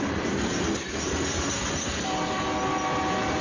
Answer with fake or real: real